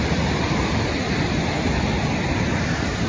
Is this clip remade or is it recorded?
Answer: recorded